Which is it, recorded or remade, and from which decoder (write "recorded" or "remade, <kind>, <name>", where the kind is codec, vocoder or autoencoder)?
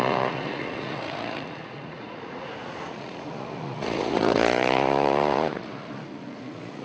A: remade, vocoder, Vocos